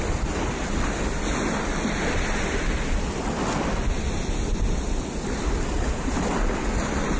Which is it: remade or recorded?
recorded